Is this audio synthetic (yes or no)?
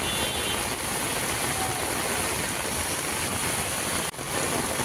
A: no